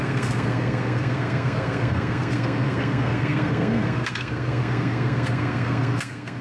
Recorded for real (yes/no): no